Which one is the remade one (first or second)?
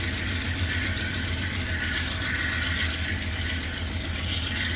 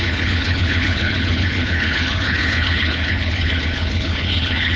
second